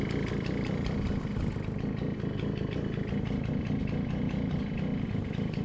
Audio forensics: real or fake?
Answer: real